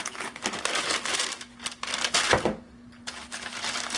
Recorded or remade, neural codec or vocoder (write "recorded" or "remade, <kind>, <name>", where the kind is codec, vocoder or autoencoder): recorded